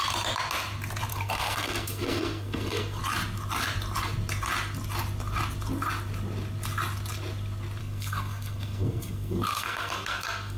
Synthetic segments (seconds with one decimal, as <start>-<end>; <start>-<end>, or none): 1.1-3.0; 7.8-10.6